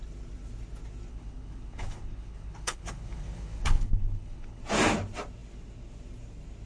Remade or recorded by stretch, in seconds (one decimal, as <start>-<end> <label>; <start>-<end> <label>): 0.0-1.1 recorded; 1.1-4.6 remade; 4.6-6.7 recorded